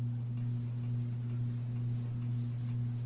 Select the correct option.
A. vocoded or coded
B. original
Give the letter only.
B